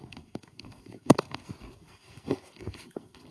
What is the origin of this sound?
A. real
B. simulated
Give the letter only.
B